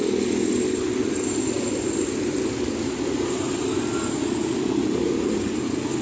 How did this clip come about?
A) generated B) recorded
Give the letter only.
B